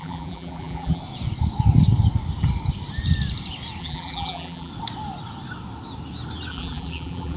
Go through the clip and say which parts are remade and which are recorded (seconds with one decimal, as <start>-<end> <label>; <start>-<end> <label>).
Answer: 0.0-1.0 remade; 1.0-3.8 recorded; 3.8-4.7 remade; 4.7-6.5 recorded; 6.5-7.4 remade